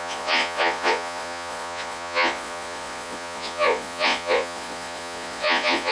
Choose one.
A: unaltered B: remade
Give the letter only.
B